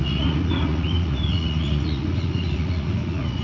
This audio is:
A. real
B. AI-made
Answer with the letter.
B